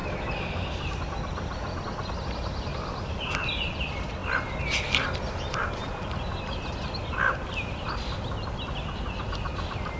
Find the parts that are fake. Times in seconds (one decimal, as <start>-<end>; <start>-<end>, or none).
none